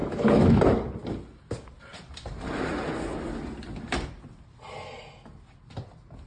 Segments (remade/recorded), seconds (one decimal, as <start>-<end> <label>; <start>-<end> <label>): 0.0-0.5 remade; 0.5-6.3 recorded